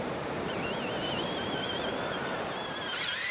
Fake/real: fake